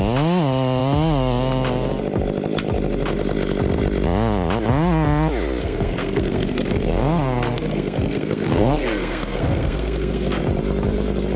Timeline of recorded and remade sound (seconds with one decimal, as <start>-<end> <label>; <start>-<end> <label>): 0.0-5.6 recorded; 5.6-10.4 remade; 10.4-11.4 recorded